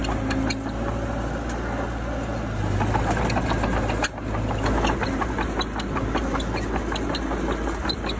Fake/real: real